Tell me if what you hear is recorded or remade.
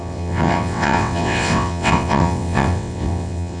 remade